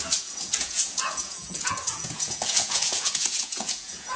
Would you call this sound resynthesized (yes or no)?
yes